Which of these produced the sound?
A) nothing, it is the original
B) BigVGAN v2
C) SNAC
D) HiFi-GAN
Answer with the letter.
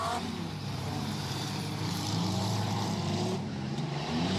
B